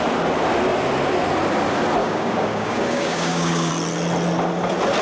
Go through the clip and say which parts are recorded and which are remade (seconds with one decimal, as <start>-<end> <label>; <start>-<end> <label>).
0.0-2.0 recorded; 2.0-3.7 remade; 3.7-5.0 recorded